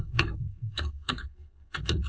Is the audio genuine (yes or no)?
no